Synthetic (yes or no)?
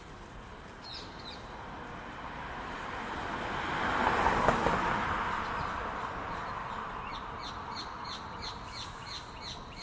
no